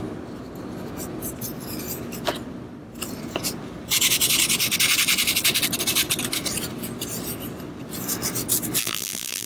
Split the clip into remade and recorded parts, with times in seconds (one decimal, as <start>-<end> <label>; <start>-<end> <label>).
0.0-8.8 recorded; 8.8-9.5 remade